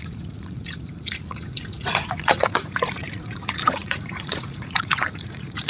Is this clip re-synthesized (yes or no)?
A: yes